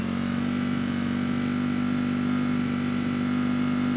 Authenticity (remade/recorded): recorded